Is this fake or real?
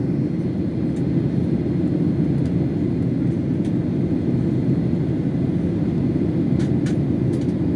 real